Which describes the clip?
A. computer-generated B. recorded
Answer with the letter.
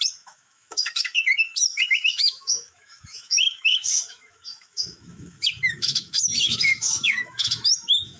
A